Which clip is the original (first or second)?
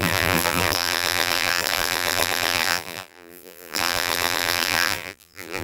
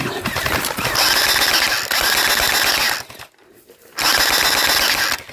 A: second